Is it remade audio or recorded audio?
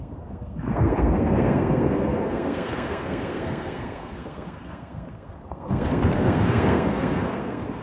remade